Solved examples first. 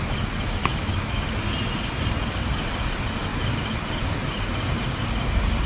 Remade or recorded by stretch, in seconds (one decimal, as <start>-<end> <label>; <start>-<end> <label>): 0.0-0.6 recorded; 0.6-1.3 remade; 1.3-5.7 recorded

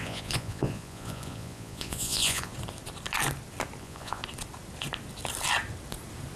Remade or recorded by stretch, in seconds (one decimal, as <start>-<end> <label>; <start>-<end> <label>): 0.0-2.5 remade; 2.5-3.8 recorded; 3.8-4.2 remade; 4.2-6.4 recorded

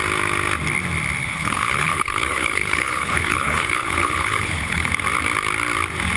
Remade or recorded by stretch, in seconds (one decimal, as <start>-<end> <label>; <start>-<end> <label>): 0.0-1.2 recorded; 1.2-4.9 remade; 4.9-6.2 recorded

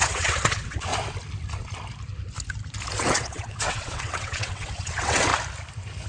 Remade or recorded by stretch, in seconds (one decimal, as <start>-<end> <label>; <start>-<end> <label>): 0.0-0.9 remade; 0.9-3.0 recorded; 3.0-5.3 remade; 5.3-6.1 recorded

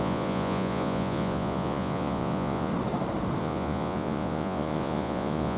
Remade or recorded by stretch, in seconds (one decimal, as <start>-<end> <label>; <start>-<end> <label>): 0.0-2.7 remade; 2.7-3.4 recorded; 3.4-5.6 remade

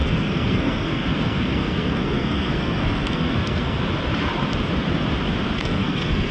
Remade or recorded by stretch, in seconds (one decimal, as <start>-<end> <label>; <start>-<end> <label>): 0.0-3.8 remade; 3.8-5.6 recorded; 5.6-6.3 remade

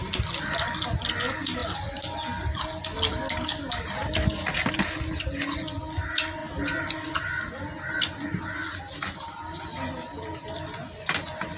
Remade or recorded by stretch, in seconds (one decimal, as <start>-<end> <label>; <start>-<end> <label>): 0.0-11.6 recorded

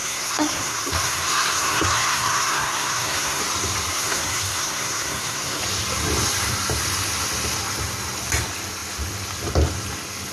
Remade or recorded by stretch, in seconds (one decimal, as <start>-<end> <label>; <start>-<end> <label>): 0.0-3.4 remade; 3.4-3.9 recorded; 3.9-5.6 remade; 5.6-10.3 recorded